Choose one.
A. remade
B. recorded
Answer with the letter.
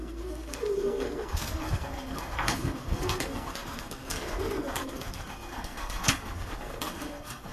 A